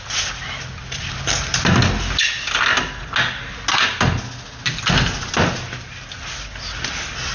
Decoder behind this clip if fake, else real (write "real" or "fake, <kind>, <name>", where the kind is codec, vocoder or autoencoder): real